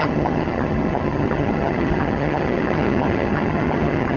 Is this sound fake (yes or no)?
yes